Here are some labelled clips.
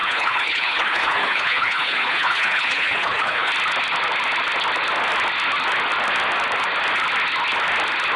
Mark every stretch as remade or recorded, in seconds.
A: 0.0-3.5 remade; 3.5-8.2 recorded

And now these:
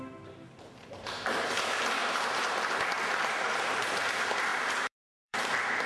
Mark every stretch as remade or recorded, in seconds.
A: 0.0-2.0 recorded; 2.0-4.0 remade; 4.0-4.5 recorded; 4.5-5.5 remade; 5.5-5.9 recorded

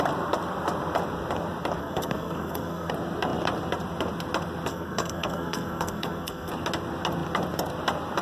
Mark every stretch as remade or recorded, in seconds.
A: 0.0-1.8 recorded; 1.8-2.9 remade; 2.9-4.7 recorded; 4.7-6.5 remade; 6.5-8.2 recorded

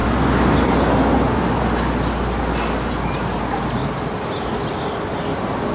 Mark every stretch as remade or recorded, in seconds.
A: 0.0-3.8 recorded; 3.8-4.5 remade; 4.5-5.7 recorded